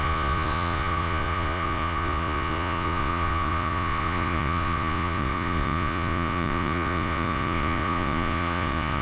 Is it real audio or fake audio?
fake